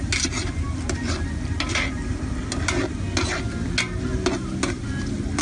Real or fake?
real